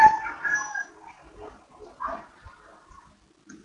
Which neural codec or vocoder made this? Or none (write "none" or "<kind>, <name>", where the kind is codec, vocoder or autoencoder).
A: none